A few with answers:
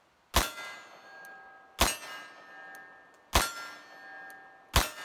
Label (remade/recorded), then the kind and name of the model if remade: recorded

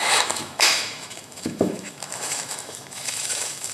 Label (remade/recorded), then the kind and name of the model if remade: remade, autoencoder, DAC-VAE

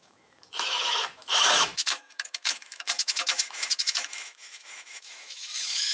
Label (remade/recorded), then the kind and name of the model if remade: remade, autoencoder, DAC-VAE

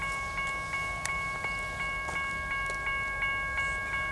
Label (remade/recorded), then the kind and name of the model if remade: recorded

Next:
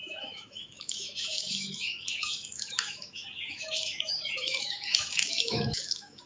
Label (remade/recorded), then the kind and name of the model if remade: remade, autoencoder, DAC-VAE